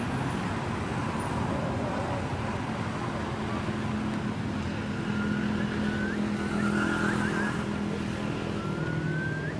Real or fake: real